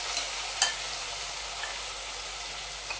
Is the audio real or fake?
real